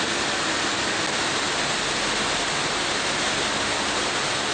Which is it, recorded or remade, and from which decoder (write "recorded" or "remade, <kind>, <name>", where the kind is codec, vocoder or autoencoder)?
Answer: recorded